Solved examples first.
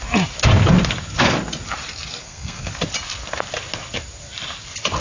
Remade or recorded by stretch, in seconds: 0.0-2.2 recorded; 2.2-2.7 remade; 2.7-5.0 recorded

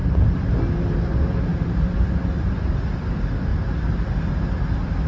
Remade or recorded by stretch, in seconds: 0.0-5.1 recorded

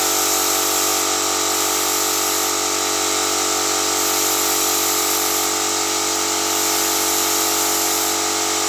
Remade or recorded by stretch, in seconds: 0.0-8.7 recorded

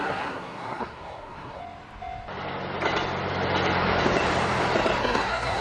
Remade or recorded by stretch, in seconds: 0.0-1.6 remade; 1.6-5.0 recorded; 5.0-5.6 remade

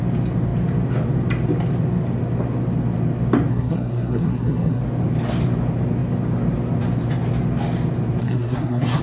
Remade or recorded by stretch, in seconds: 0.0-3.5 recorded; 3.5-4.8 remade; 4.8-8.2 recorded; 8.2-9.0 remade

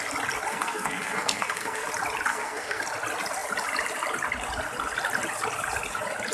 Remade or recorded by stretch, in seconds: 0.0-0.5 recorded; 0.5-1.9 remade; 1.9-2.3 recorded; 2.3-2.8 remade; 2.8-6.3 recorded